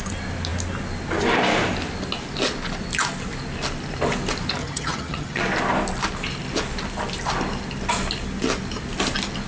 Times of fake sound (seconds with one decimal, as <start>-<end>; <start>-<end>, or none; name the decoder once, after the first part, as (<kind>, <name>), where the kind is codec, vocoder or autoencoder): 4.6-5.4 (vocoder, HiFi-GAN)